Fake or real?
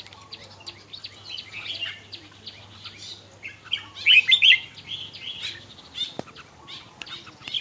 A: real